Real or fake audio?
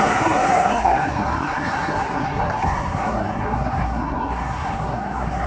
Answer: fake